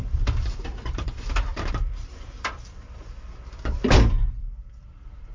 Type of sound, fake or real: fake